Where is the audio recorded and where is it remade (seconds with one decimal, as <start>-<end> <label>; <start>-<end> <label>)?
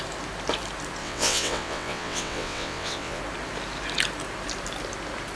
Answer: 0.0-1.0 recorded; 1.0-3.2 remade; 3.2-5.4 recorded